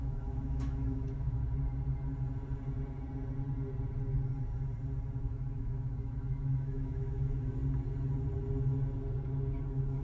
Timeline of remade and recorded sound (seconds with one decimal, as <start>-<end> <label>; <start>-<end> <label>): 0.0-1.4 remade; 1.4-5.2 recorded; 5.2-7.6 remade; 7.6-9.6 recorded; 9.6-10.0 remade